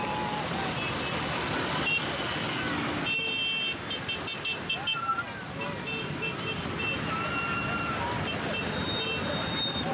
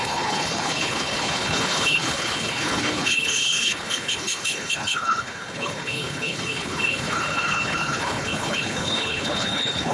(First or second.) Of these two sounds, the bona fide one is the first